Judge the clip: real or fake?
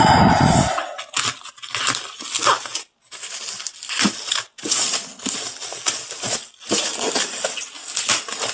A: real